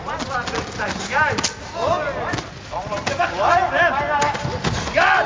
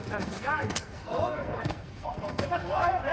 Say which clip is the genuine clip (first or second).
first